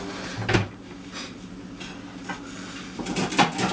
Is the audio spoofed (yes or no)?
no